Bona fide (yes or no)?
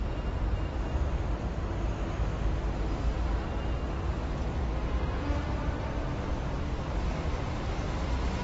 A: yes